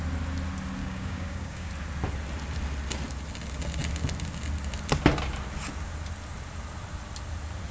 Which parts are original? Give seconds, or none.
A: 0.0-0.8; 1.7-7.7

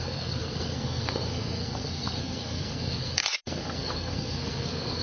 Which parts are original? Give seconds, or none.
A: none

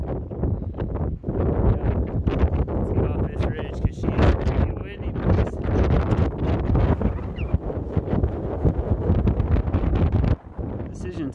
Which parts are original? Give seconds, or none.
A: 0.0-11.3